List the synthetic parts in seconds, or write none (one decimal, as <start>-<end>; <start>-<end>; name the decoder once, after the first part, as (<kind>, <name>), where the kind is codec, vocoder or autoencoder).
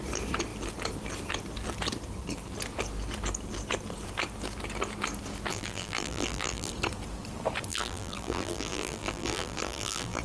5.5-6.7 (vocoder, BigVGAN v2); 7.7-10.2